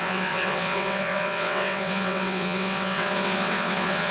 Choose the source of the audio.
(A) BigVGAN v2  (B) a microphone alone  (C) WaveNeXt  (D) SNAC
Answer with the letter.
C